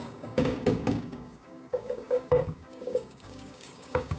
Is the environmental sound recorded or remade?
remade